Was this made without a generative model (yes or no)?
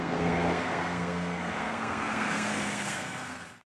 no